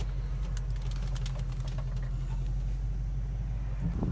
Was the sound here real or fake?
real